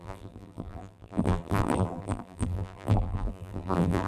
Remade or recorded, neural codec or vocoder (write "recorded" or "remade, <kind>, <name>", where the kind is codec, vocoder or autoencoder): remade, vocoder, BigVGAN v2